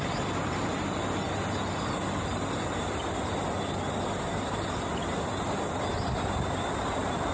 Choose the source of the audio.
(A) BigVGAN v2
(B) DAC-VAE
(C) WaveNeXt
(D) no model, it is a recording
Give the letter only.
D